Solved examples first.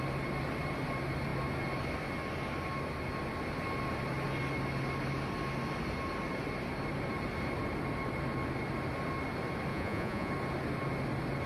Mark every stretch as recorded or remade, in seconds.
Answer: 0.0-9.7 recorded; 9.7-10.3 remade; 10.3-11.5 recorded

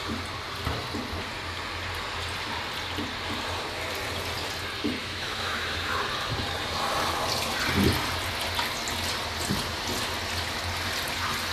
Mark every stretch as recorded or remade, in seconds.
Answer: 0.0-5.0 recorded; 5.0-6.0 remade; 6.0-11.5 recorded

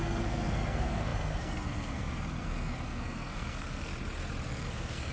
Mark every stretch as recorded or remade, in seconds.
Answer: 0.0-3.9 remade; 3.9-4.5 recorded; 4.5-5.1 remade

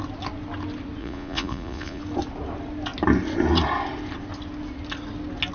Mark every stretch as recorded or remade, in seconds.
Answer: 0.0-1.0 recorded; 1.0-2.0 remade; 2.0-5.5 recorded

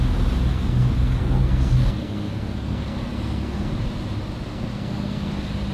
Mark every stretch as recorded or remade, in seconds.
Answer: 0.0-0.5 recorded; 0.5-3.7 remade; 3.7-4.5 recorded; 4.5-5.3 remade; 5.3-5.7 recorded

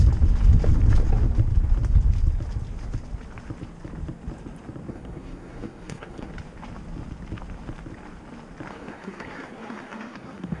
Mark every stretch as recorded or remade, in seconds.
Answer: 0.0-4.9 recorded; 4.9-6.3 remade; 6.3-8.7 recorded; 8.7-10.6 remade